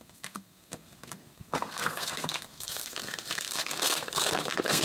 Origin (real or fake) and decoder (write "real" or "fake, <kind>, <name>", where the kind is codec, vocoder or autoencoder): fake, codec, SNAC